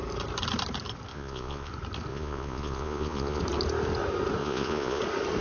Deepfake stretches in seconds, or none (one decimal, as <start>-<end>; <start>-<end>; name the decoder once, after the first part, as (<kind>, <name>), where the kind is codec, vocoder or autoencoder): 1.1-1.7 (vocoder, Vocos); 2.1-3.4; 4.4-5.0